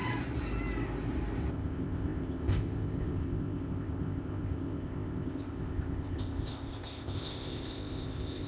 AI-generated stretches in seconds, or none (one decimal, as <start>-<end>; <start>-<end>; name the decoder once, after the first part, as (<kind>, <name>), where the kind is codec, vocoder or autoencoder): 1.5-8.5 (codec, ZipCodec)